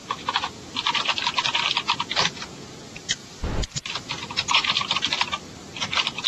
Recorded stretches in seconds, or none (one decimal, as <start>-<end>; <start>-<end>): 0.0-3.2; 4.7-6.3